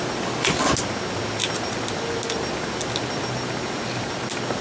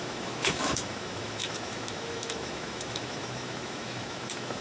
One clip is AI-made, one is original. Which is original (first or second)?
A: first